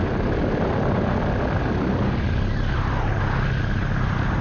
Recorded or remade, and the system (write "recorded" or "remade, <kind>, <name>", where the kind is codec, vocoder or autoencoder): recorded